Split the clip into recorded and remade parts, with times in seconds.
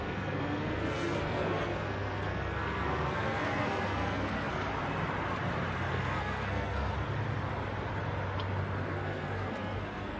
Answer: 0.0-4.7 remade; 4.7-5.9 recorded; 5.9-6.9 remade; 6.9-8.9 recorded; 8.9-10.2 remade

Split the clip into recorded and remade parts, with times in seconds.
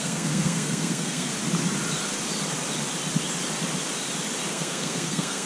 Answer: 0.0-1.3 remade; 1.3-4.5 recorded; 4.5-5.5 remade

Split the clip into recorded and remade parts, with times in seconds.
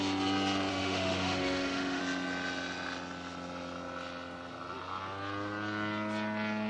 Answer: 0.0-0.7 recorded; 0.7-2.0 remade; 2.0-6.7 recorded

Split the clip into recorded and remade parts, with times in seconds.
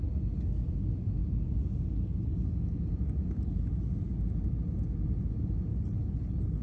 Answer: 0.0-5.7 recorded; 5.7-6.6 remade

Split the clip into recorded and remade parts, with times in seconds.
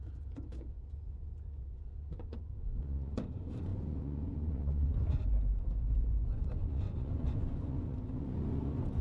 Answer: 0.0-9.0 remade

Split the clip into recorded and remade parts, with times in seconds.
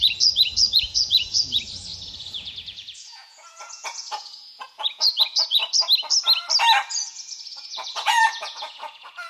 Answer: 0.0-5.6 remade; 5.6-6.9 recorded; 6.9-9.3 remade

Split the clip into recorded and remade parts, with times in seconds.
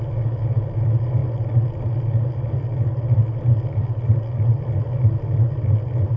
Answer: 0.0-6.2 recorded